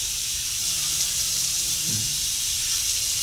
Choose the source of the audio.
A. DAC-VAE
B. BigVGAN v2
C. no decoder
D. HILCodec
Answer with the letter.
B